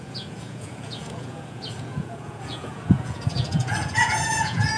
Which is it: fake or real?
fake